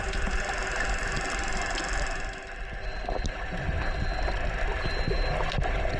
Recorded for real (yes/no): yes